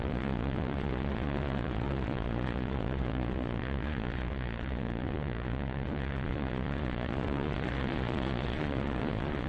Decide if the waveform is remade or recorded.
remade